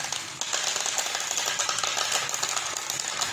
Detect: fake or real real